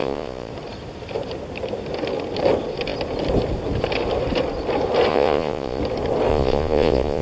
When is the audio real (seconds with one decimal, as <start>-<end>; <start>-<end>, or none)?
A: 0.5-5.1; 5.8-6.3